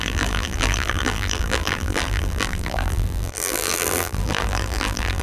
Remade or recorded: remade